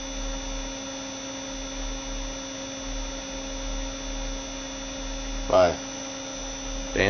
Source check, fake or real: real